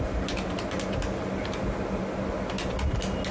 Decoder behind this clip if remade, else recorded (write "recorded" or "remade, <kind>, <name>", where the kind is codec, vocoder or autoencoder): recorded